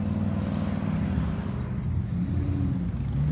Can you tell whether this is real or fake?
real